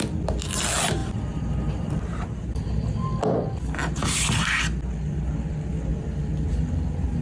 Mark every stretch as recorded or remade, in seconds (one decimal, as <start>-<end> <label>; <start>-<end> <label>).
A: 0.0-1.0 recorded; 1.0-3.1 remade; 3.1-5.9 recorded; 5.9-7.2 remade